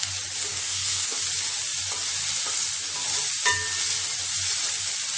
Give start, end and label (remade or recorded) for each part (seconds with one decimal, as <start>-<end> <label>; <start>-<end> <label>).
0.0-0.5 recorded; 0.5-1.2 remade; 1.2-5.2 recorded